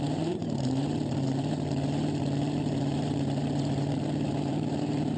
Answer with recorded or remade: remade